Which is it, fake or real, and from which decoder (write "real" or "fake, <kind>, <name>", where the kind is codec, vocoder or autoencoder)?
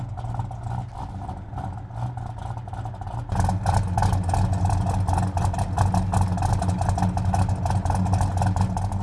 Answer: real